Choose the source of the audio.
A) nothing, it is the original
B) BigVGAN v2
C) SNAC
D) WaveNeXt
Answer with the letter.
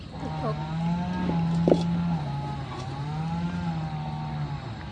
A